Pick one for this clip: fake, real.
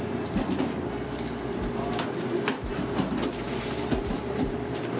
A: fake